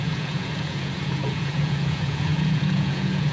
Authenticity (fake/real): fake